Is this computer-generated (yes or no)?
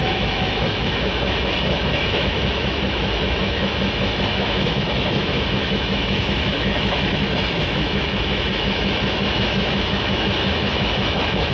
yes